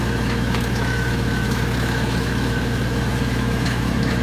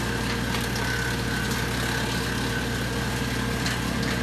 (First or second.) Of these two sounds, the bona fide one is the second